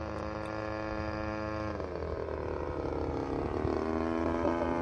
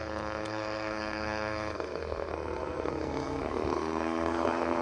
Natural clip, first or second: first